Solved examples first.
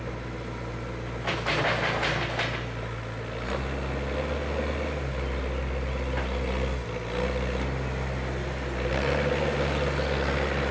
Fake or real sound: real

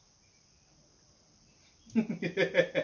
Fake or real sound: real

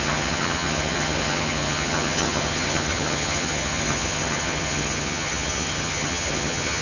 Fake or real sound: fake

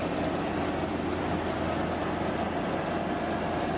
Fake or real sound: real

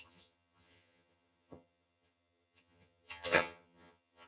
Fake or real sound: fake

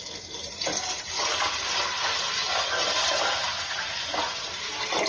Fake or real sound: real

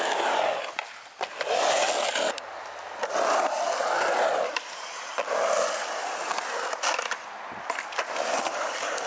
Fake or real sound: real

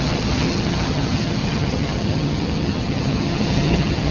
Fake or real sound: fake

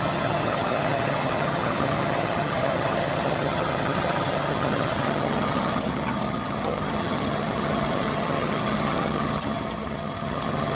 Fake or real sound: fake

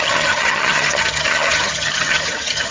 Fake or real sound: fake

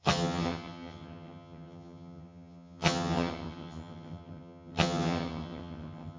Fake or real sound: fake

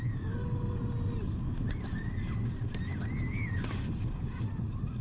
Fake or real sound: real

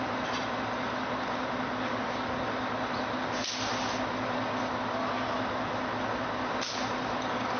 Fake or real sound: real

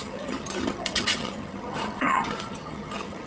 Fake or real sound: fake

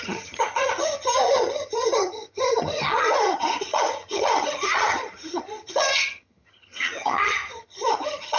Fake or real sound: fake